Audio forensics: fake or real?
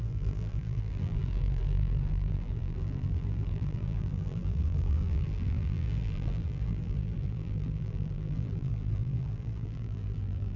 fake